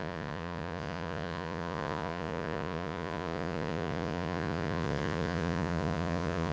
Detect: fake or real fake